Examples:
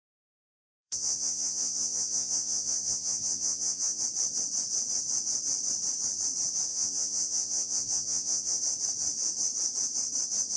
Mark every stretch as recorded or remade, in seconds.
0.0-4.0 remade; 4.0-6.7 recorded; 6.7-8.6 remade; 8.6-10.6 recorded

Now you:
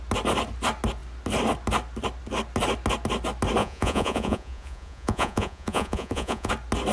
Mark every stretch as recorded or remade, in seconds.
0.0-3.6 recorded; 3.6-6.5 remade; 6.5-6.9 recorded